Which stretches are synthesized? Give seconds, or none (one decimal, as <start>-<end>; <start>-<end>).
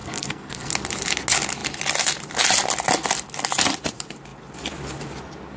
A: 0.0-0.7